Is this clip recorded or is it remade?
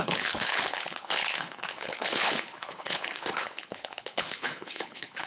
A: remade